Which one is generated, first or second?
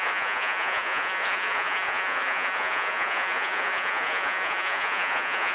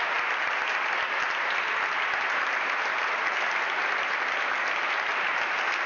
first